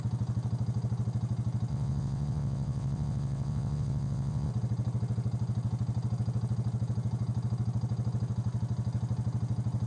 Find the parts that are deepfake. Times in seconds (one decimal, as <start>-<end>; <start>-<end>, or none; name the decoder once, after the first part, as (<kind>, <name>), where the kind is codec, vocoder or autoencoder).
1.7-4.5 (vocoder, WaveNeXt)